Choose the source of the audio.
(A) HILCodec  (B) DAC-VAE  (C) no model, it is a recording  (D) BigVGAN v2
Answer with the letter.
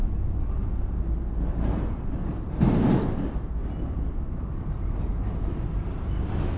C